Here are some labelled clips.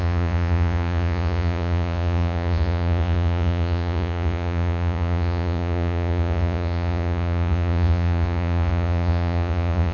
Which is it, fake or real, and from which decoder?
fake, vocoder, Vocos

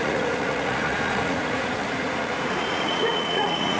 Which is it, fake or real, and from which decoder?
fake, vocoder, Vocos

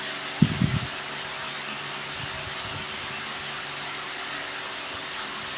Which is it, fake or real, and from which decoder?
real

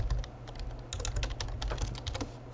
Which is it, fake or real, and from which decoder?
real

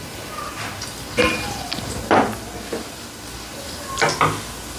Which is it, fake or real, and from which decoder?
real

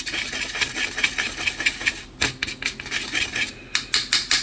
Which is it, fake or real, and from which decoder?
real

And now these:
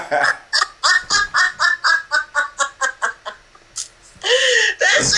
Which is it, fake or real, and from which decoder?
real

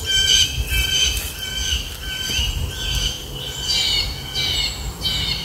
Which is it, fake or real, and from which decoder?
real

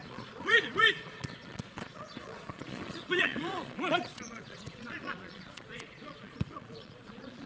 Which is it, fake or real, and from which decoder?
fake, vocoder, Vocos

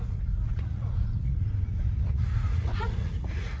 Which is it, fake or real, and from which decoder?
fake, vocoder, Vocos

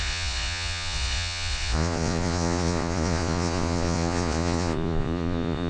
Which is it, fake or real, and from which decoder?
fake, vocoder, Vocos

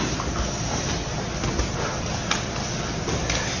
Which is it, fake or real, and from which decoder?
real